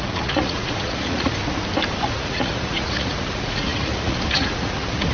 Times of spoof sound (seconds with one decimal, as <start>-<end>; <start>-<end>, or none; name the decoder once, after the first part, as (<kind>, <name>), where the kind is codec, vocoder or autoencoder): 0.0-1.4 (vocoder, Vocos); 2.0-5.1